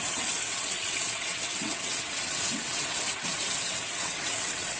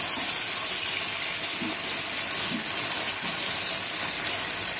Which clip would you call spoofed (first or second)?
first